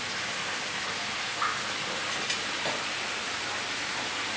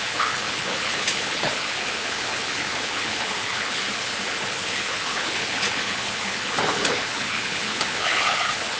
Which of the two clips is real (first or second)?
first